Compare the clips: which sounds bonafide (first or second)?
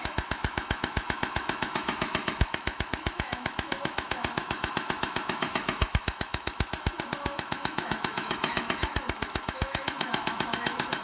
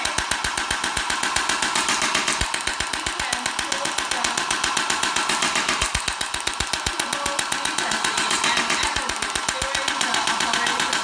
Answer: second